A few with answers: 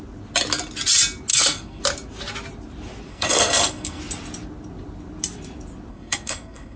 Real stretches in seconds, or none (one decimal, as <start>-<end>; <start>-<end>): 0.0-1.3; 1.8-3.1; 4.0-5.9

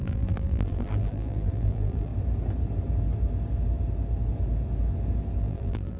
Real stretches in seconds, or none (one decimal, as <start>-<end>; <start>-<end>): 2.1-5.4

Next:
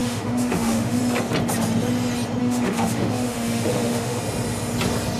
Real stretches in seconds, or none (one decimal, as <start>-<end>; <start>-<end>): 1.0-2.4; 4.2-5.2

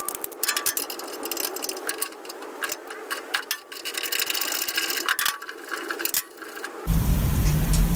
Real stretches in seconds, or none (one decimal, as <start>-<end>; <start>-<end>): 0.0-8.0

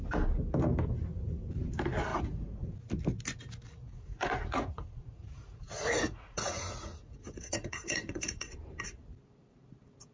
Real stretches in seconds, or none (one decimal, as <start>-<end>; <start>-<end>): 0.0-2.1; 2.7-3.7; 8.5-10.1